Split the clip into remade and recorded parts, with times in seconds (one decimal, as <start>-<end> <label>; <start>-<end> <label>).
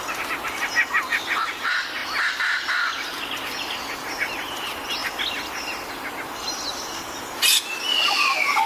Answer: 0.0-8.7 recorded